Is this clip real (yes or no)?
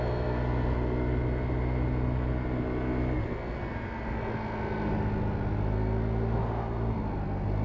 yes